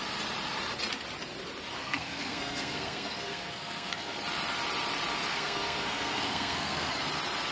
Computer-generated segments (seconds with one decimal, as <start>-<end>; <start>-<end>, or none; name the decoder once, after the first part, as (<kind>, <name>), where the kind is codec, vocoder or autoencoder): 1.8-4.2 (codec, SNAC); 5.3-7.0